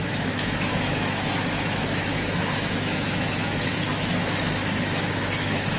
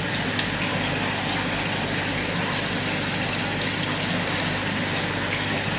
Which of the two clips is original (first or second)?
second